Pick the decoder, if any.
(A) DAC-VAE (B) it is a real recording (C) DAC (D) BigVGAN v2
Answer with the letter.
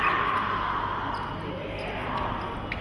B